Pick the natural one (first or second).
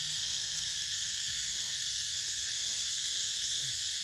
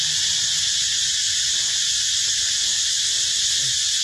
second